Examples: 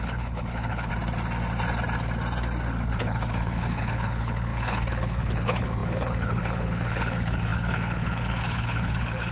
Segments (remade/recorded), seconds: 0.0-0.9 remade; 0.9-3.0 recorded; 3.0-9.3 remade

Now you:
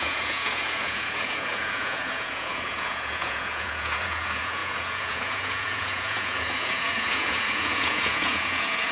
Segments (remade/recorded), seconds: 0.0-8.9 remade

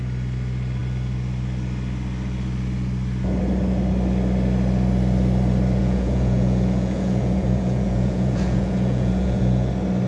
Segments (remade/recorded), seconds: 0.0-5.8 recorded; 5.8-9.7 remade; 9.7-10.1 recorded

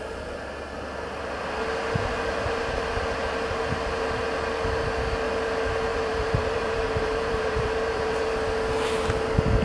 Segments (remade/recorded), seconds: 0.0-5.9 recorded; 5.9-8.3 remade; 8.3-9.6 recorded

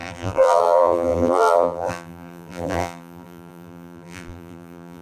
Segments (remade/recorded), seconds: 0.0-5.0 remade

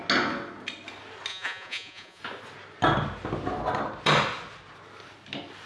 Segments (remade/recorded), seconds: 0.0-1.3 recorded; 1.3-2.2 remade; 2.2-5.7 recorded

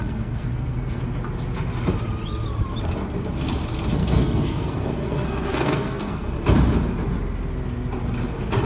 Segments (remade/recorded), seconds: 0.0-1.0 remade; 1.0-4.0 recorded; 4.0-6.3 remade; 6.3-8.7 recorded